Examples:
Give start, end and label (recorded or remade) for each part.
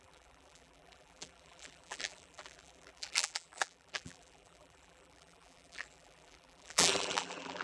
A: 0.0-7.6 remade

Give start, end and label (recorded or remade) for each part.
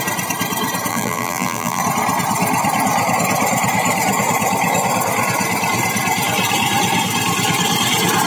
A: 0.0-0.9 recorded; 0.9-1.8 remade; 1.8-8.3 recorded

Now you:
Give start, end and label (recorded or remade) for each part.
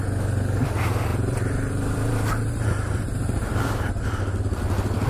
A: 0.0-1.1 recorded; 1.1-4.2 remade; 4.2-5.1 recorded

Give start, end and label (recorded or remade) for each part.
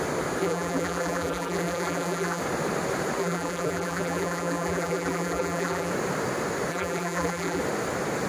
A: 0.0-0.4 recorded; 0.4-2.4 remade; 2.4-3.2 recorded; 3.2-5.9 remade; 5.9-6.7 recorded; 6.7-7.6 remade; 7.6-8.3 recorded